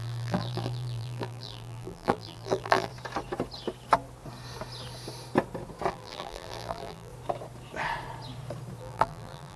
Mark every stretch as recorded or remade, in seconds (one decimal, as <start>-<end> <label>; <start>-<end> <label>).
0.0-2.9 remade; 2.9-5.9 recorded; 5.9-7.1 remade; 7.1-8.8 recorded; 8.8-9.6 remade